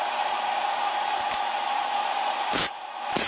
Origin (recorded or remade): remade